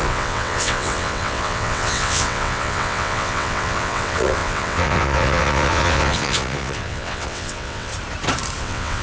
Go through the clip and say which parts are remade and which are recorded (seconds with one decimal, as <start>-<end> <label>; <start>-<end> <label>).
0.0-7.9 remade; 7.9-8.6 recorded; 8.6-9.0 remade